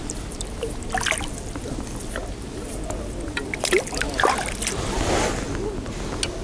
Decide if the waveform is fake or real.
real